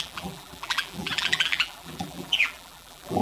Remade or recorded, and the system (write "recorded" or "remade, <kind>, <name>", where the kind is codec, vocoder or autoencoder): remade, vocoder, BigVGAN v2